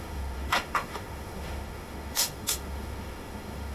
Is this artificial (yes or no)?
yes